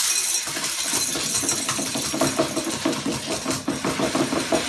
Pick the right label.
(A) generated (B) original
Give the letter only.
B